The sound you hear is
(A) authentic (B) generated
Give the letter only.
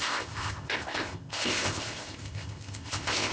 B